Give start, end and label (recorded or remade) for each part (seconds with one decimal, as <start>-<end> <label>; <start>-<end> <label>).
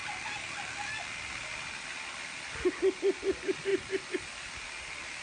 0.0-5.2 recorded